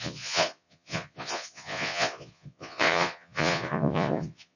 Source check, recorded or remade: remade